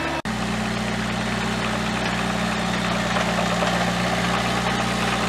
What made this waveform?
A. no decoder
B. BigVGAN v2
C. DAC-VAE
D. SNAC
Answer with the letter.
A